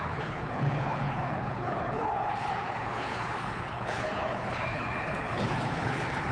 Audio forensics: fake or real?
fake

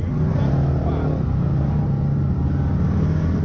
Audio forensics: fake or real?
real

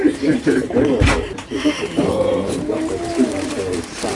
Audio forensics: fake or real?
fake